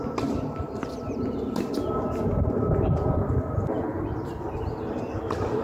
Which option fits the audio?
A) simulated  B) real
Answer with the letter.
B